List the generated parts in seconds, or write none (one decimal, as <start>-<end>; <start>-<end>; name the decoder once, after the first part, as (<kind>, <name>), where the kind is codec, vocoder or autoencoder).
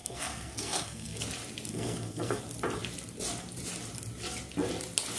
0.0-1.2 (codec, SNAC); 1.7-2.4